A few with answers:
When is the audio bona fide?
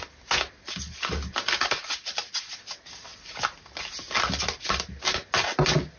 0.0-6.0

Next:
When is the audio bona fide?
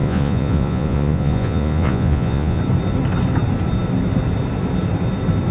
2.6-5.5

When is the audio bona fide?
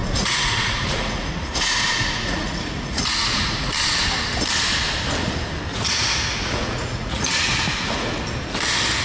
3.7-5.7; 8.2-9.0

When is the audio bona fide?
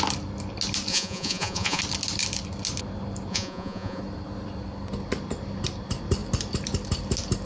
0.0-0.9; 1.8-3.3; 4.0-7.5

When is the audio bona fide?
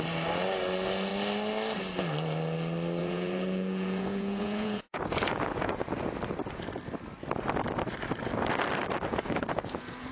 0.0-3.0; 5.9-9.1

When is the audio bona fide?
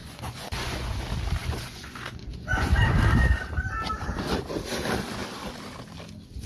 1.0-1.4; 3.0-6.5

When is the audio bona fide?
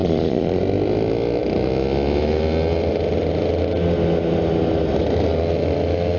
0.6-6.2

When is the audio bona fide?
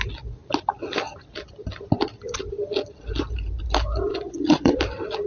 0.0-4.1; 4.8-5.3